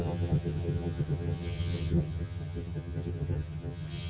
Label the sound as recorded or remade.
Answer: remade